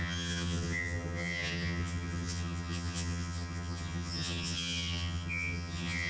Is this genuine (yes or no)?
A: no